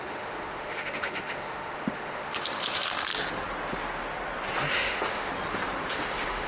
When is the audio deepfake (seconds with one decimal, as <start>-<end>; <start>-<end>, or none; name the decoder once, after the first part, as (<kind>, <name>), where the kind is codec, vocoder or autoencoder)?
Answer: 0.0-3.1 (autoencoder, DAC-VAE); 4.7-5.3; 5.9-6.5